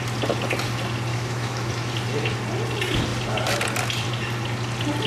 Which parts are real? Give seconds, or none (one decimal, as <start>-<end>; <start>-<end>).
0.0-1.1; 1.7-5.1